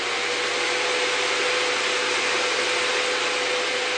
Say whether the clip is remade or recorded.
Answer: recorded